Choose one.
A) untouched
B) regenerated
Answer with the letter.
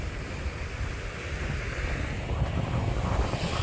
A